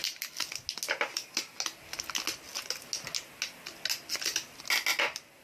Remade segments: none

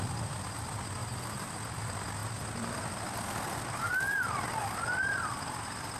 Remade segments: 1.0-1.5

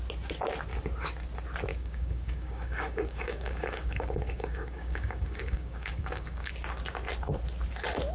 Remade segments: 1.7-6.5

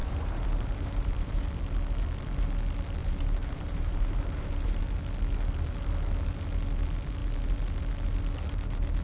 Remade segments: 0.0-1.5; 3.0-4.8

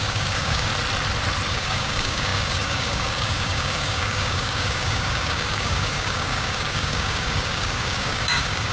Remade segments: 0.0-0.7; 1.5-8.7